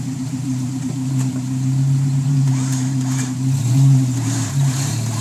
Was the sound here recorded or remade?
remade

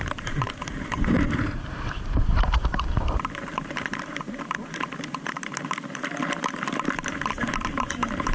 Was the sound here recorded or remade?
remade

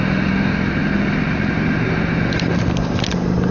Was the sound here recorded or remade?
recorded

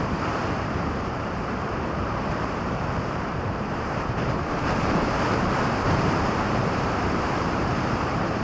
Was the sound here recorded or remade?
remade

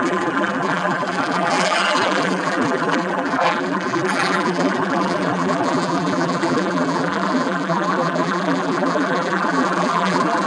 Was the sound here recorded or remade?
remade